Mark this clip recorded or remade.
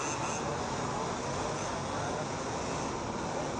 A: recorded